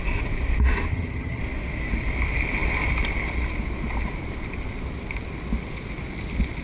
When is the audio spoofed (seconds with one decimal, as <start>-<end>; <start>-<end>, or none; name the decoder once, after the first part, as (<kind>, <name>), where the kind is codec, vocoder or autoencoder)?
0.9-1.4 (vocoder, HiFi-GAN)